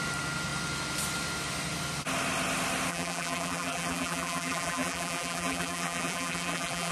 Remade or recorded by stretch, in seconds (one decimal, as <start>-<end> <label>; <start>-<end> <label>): 0.0-2.9 recorded; 2.9-6.9 remade